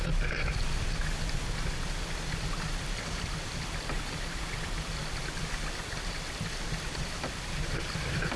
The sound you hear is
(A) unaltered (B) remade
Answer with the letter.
A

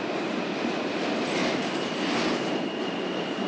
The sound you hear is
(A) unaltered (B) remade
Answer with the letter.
A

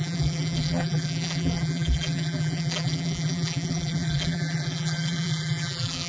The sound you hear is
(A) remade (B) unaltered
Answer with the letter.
A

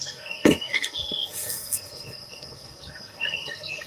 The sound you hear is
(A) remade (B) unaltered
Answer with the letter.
A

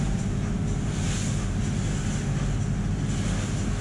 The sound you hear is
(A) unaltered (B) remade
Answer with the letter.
A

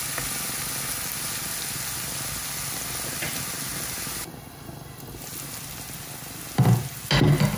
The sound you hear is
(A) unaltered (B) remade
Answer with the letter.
A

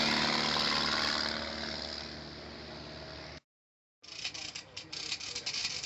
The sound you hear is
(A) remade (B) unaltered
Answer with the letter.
B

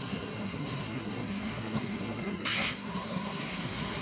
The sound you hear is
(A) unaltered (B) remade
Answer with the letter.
B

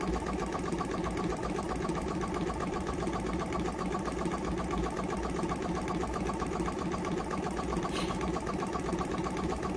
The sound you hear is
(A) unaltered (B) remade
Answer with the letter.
A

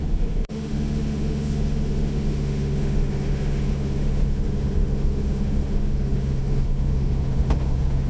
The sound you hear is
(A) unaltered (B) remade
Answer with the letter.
B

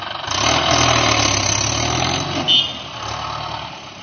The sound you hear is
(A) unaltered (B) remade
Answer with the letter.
A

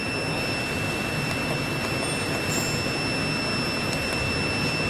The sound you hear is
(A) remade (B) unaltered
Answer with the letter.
B